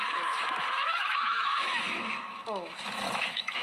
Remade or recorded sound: remade